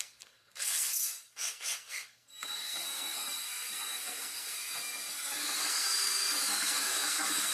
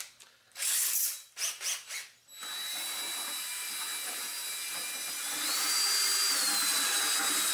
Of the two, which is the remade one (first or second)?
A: first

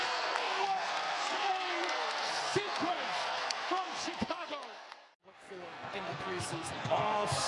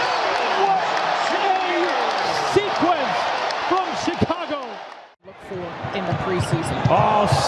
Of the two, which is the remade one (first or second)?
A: first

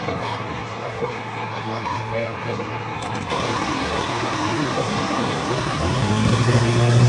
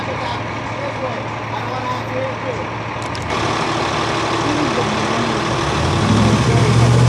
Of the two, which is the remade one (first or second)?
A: first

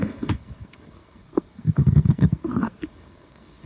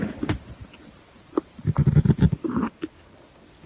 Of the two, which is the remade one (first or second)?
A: first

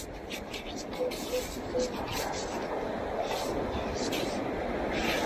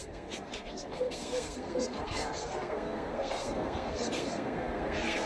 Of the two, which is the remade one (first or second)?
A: second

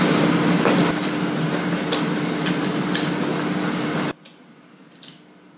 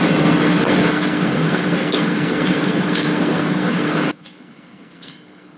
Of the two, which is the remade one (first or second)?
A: second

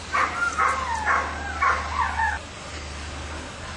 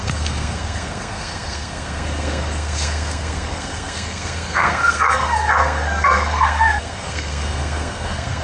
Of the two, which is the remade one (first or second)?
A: second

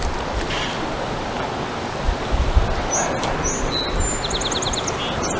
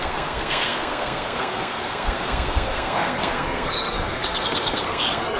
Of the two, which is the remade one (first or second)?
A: second